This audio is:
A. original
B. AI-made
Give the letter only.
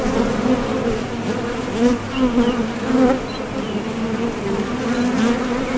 A